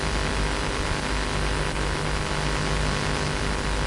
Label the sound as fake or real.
real